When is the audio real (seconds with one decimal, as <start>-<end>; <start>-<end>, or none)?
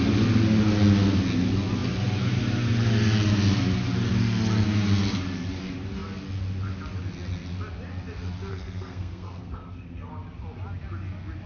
0.0-8.5; 10.1-11.5